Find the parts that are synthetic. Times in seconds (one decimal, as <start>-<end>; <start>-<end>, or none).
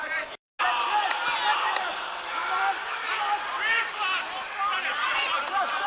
0.0-0.5; 1.8-5.9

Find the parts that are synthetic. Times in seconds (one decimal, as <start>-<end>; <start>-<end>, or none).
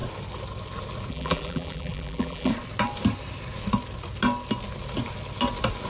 1.1-2.5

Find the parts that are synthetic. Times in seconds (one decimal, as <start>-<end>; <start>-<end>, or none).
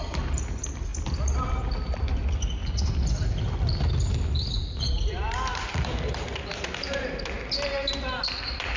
5.5-7.2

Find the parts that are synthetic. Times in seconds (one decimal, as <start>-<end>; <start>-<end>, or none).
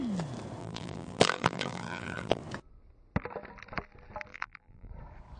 0.6-2.4; 4.3-4.9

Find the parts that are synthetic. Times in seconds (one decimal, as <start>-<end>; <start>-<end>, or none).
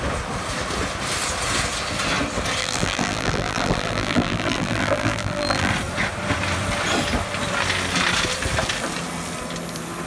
2.6-5.7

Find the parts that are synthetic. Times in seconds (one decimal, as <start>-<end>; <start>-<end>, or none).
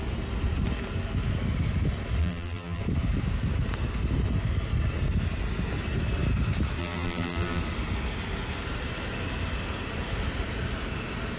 2.2-2.8; 6.8-7.6